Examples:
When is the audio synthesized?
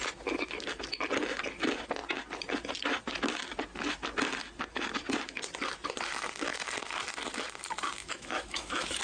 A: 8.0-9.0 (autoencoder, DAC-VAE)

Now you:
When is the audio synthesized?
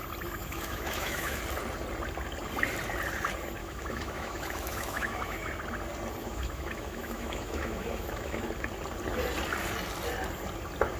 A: 0.4-1.4 (autoencoder, DAC-VAE); 3.6-5.5; 6.2-8.5